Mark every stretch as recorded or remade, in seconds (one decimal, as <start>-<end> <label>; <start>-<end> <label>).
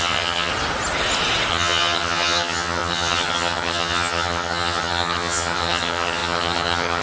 0.0-0.5 remade; 0.5-1.5 recorded; 1.5-7.0 remade